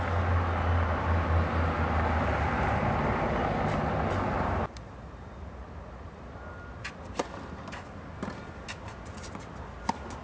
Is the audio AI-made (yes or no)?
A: no